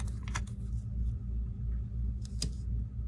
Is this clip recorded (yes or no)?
yes